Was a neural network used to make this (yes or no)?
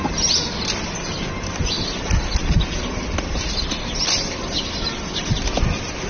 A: no